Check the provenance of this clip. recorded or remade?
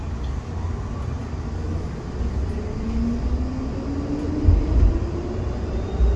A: recorded